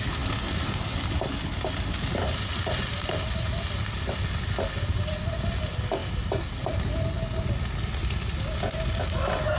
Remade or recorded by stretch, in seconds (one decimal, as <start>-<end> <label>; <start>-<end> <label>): 0.0-9.6 recorded